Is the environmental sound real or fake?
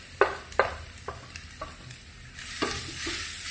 real